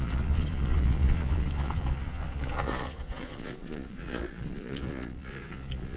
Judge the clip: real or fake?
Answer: fake